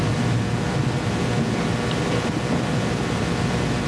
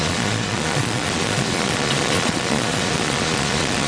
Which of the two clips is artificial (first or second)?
second